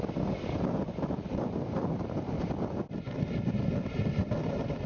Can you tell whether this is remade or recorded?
recorded